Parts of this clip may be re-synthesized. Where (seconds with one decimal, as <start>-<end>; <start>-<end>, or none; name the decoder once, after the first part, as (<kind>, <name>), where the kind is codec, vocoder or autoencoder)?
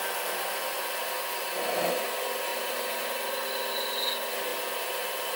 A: none